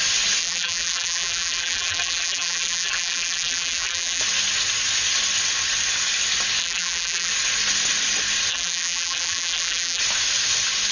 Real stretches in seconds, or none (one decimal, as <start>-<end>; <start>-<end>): 0.0-0.4; 4.2-6.6; 7.3-8.5; 10.0-10.9